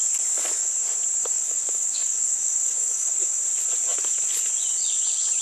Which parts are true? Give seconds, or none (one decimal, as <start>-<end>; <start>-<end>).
0.0-1.2; 3.4-5.4